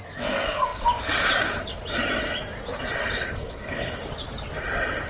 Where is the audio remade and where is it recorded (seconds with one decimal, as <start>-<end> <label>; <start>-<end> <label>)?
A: 0.0-3.2 recorded; 3.2-4.0 remade; 4.0-5.1 recorded